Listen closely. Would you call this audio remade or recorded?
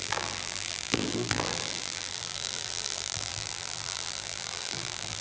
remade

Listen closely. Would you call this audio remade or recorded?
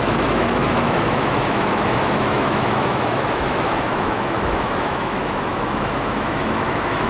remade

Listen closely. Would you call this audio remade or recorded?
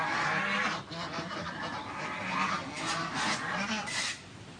recorded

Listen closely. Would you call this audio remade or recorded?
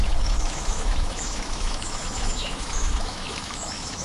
remade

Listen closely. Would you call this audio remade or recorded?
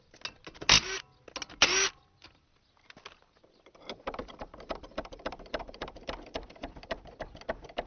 recorded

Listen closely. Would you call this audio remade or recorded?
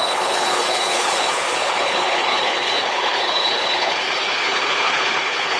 remade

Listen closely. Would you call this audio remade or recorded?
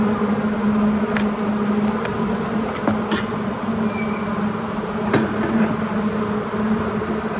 recorded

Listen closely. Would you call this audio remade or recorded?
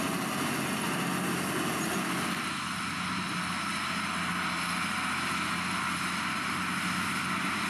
recorded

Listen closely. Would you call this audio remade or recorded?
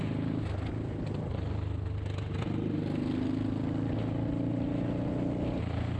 recorded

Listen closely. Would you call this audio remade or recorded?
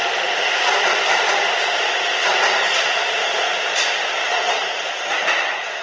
recorded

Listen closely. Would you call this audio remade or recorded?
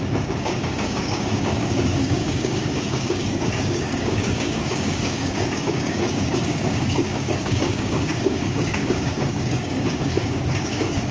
remade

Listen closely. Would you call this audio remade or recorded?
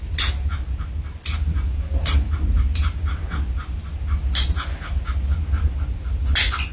recorded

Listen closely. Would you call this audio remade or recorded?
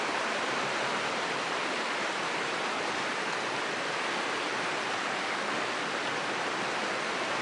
recorded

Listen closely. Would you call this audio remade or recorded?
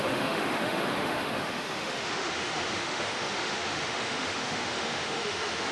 remade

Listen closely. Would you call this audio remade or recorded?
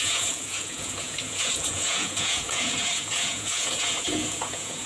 remade